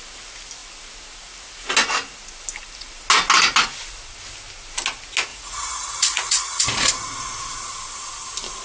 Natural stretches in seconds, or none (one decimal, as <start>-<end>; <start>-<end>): 0.0-5.3; 6.9-8.6

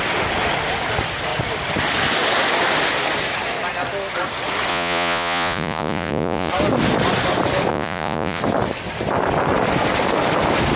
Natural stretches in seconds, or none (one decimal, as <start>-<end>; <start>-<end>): 0.0-4.7; 6.5-7.7; 8.4-10.8

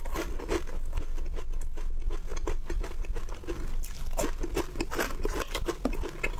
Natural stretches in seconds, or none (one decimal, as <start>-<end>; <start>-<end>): 0.0-6.4

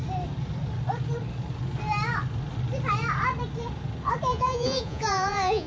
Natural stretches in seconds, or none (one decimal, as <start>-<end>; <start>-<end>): 0.0-4.3

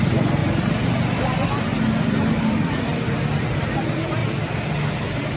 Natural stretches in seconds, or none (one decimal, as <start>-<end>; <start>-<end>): 0.4-2.4; 2.9-3.4; 4.2-4.9

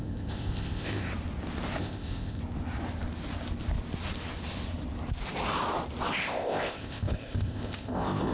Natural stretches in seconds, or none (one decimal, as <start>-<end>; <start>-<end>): 1.1-1.8; 2.4-6.1